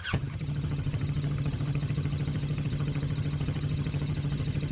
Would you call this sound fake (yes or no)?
yes